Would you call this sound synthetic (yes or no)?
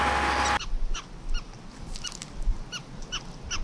no